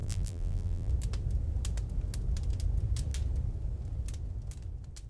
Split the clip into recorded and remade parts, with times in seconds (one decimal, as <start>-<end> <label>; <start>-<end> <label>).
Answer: 0.0-0.9 remade; 0.9-5.1 recorded